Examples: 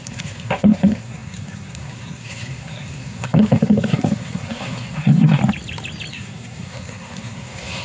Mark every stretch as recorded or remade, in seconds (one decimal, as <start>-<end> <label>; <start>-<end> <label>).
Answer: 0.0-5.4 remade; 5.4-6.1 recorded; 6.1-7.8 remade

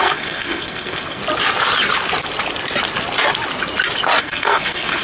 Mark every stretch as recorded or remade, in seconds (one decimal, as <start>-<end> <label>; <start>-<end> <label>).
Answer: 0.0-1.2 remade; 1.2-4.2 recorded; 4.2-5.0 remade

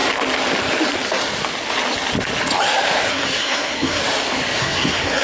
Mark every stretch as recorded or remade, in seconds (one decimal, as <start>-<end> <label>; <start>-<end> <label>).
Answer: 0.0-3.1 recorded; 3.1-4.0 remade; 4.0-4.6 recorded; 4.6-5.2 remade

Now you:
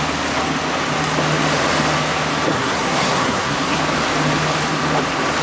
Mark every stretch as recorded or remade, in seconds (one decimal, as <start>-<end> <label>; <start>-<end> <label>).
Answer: 0.0-2.5 recorded; 2.5-3.8 remade; 3.8-5.4 recorded

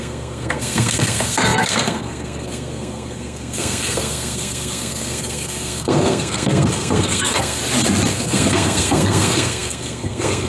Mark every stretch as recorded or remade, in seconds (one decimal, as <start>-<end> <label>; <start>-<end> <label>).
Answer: 0.0-7.6 remade; 7.6-8.1 recorded; 8.1-10.5 remade